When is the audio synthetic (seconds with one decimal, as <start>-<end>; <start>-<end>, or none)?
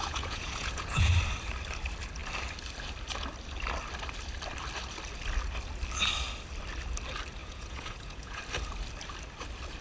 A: 0.0-1.1; 7.4-8.4